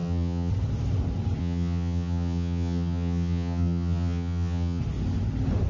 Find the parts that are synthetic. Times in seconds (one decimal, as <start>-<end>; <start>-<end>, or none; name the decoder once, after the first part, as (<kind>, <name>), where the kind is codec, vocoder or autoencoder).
0.0-0.5 (vocoder, HiFi-GAN); 1.4-4.8